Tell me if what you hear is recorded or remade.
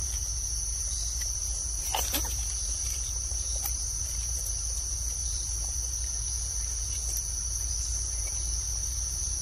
remade